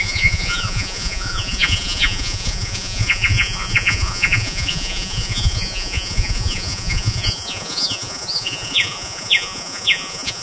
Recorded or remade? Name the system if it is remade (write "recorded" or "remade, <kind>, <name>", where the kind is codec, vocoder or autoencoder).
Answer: remade, vocoder, Vocos